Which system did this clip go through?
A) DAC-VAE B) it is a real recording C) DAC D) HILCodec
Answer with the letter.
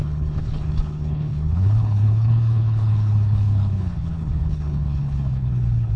D